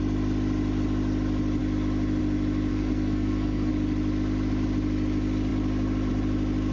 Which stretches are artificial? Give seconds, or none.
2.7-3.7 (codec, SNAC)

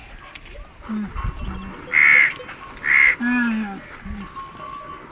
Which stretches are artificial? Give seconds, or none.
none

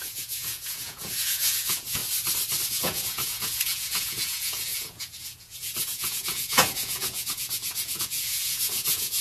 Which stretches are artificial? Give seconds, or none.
0.0-2.0 (vocoder, Vocos); 2.7-9.2

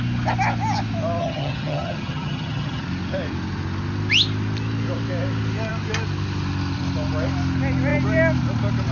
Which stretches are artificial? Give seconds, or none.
1.2-2.8 (vocoder, HiFi-GAN)

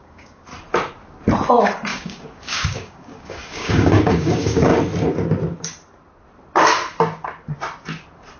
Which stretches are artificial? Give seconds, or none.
0.0-0.5 (codec, DAC); 1.5-4.7

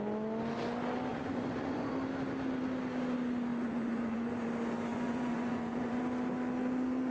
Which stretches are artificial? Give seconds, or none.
1.1-1.9 (vocoder, Vocos); 3.5-4.3; 4.9-6.0

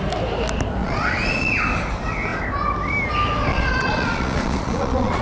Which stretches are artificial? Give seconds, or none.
0.8-1.5 (vocoder, Vocos); 3.5-5.2